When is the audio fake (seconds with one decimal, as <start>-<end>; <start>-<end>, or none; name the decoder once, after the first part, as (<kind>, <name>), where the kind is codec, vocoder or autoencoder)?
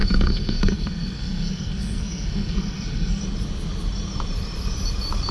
0.0-3.2 (codec, SNAC)